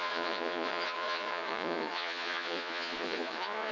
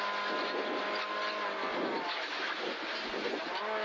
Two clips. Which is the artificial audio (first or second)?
first